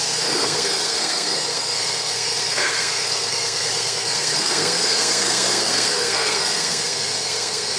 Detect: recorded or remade remade